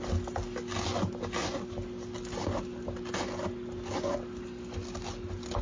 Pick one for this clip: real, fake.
real